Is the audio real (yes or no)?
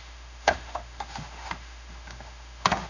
no